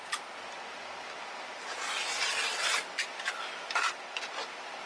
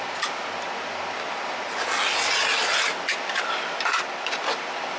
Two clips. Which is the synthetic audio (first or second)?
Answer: first